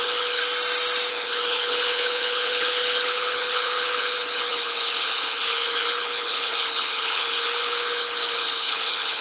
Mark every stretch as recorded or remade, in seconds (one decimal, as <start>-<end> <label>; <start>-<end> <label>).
0.0-0.4 remade; 0.4-1.1 recorded; 1.1-9.2 remade